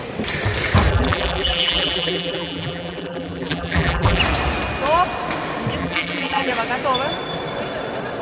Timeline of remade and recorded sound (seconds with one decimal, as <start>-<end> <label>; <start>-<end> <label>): 0.0-0.9 recorded; 0.9-4.2 remade; 4.2-5.8 recorded; 5.8-6.5 remade; 6.5-8.2 recorded